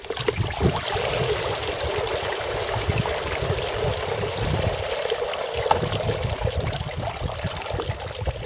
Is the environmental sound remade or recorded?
recorded